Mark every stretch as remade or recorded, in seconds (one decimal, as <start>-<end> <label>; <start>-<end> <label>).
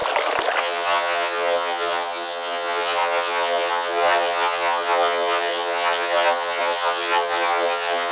0.0-0.6 recorded; 0.6-8.1 remade